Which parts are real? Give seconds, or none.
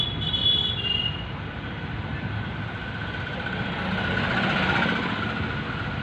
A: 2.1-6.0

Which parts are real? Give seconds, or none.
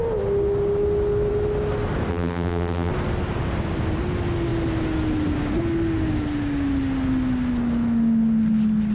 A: 0.0-2.1; 2.9-8.9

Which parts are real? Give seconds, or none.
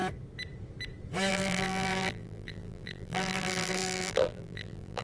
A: 0.0-1.3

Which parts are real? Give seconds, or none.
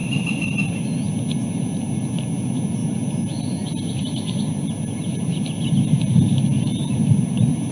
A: 0.0-7.7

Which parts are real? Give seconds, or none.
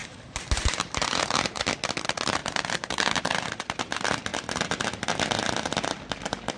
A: 1.6-2.4; 3.3-6.6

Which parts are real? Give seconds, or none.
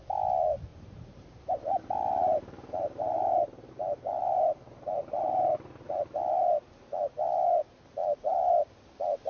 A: 0.0-0.7; 3.7-4.2; 5.9-8.0; 8.5-9.3